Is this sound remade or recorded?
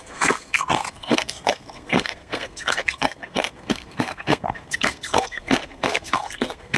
remade